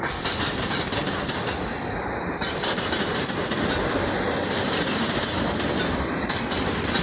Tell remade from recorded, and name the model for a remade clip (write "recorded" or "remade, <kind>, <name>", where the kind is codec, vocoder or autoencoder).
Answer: remade, vocoder, BigVGAN v2